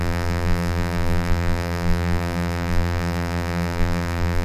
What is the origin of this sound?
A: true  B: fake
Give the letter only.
B